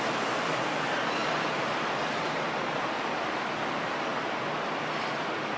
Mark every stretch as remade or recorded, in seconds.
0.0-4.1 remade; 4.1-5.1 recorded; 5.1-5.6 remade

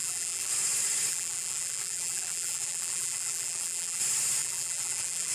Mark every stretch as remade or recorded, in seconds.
0.0-0.5 remade; 0.5-1.1 recorded; 1.1-4.0 remade; 4.0-4.4 recorded; 4.4-5.3 remade

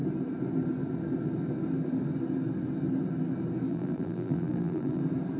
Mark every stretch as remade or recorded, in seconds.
0.0-3.7 recorded; 3.7-5.0 remade; 5.0-5.4 recorded